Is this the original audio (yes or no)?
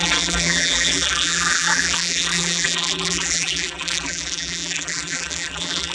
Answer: no